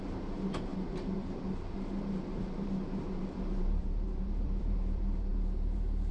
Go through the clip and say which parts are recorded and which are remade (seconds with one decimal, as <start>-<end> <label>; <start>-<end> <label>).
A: 0.0-6.1 remade